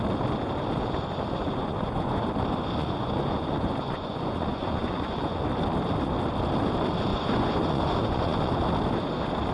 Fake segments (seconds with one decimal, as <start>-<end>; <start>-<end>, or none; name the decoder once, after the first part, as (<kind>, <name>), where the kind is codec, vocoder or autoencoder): 1.4-2.2 (vocoder, Vocos); 2.8-5.4; 7.1-8.6